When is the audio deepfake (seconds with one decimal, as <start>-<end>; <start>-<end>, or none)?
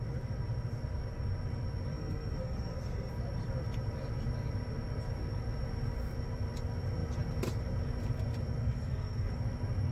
1.9-3.1; 8.6-9.4